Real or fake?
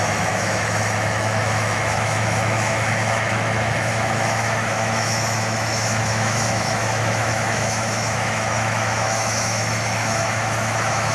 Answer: fake